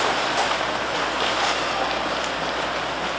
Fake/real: real